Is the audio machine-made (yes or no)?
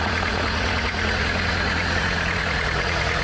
yes